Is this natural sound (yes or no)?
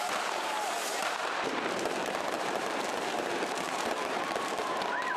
no